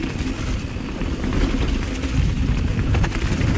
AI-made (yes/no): no